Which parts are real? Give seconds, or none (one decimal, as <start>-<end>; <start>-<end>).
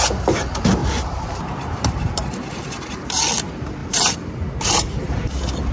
0.0-0.8; 3.2-3.8